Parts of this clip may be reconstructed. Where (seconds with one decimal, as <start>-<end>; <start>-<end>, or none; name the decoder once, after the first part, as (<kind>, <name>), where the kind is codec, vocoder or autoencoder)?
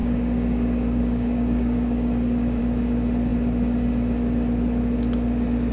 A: 0.0-2.6 (codec, DAC)